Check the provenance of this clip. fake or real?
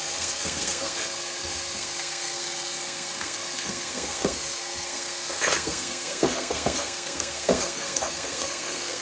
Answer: fake